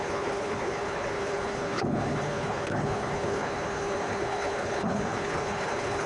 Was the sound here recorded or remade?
remade